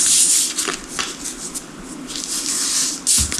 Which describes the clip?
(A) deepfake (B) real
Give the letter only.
B